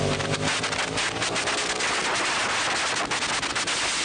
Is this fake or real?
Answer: real